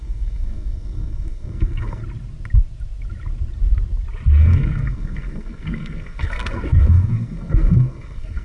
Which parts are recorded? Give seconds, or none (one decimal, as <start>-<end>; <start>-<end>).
2.0-4.4